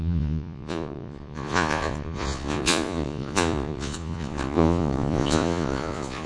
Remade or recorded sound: remade